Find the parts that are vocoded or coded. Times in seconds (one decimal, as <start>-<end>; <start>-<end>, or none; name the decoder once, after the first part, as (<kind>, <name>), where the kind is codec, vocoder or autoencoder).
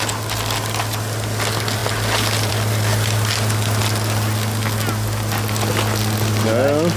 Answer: none